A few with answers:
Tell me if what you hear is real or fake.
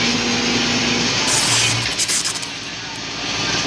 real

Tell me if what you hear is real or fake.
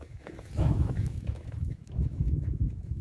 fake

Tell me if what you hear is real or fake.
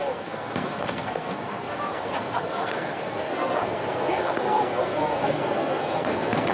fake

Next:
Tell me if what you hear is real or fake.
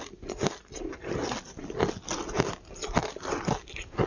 real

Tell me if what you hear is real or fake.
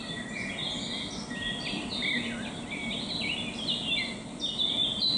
real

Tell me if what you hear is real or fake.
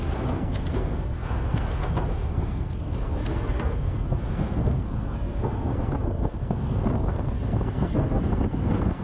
fake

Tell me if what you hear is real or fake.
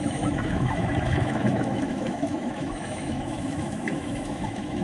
fake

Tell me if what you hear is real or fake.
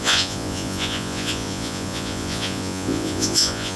fake